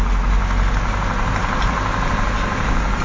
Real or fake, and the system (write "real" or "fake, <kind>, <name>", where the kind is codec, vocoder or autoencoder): real